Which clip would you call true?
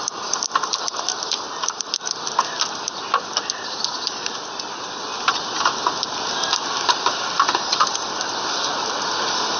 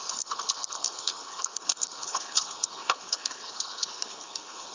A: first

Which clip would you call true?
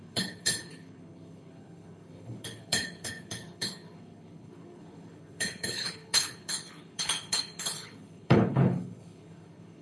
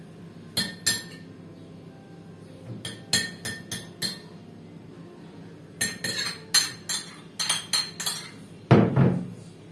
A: second